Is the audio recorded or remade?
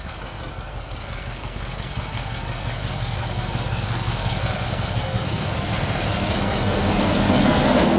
remade